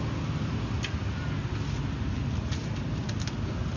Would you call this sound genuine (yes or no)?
yes